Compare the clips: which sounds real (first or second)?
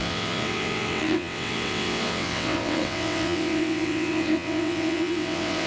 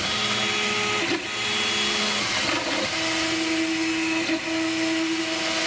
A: second